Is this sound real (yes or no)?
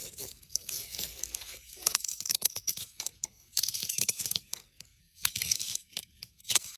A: no